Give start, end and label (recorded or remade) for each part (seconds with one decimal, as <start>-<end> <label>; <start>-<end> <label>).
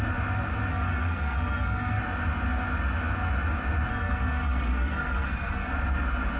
0.0-0.7 recorded; 0.7-2.0 remade; 2.0-3.9 recorded; 3.9-5.7 remade; 5.7-6.4 recorded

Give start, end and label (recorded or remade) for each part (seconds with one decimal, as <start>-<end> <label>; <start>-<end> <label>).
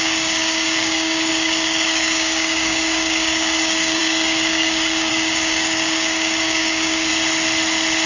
0.0-7.1 remade; 7.1-8.1 recorded